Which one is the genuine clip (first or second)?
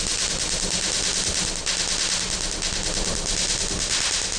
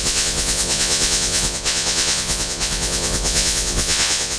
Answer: first